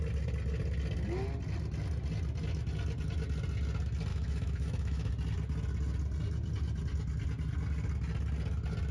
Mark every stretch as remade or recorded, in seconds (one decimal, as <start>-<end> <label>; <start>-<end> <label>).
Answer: 0.0-4.1 recorded; 4.1-5.1 remade; 5.1-8.9 recorded